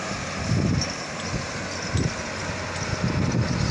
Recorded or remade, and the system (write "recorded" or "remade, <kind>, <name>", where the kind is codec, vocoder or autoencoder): recorded